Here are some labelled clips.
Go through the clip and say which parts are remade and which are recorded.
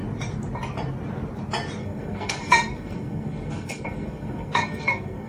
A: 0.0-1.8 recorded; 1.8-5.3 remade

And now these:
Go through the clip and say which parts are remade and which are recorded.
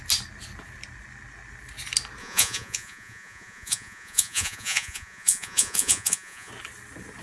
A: 0.0-2.2 recorded; 2.2-6.5 remade; 6.5-7.2 recorded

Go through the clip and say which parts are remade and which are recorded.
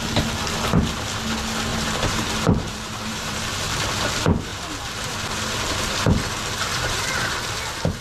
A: 0.0-1.7 recorded; 1.7-3.4 remade; 3.4-6.7 recorded; 6.7-7.3 remade; 7.3-8.0 recorded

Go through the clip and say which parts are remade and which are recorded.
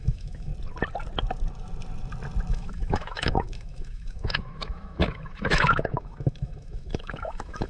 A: 0.0-0.5 remade; 0.5-2.5 recorded; 2.5-7.7 remade